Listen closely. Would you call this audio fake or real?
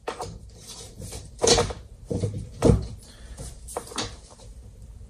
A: fake